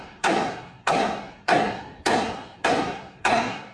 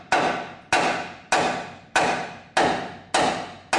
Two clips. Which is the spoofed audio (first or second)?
first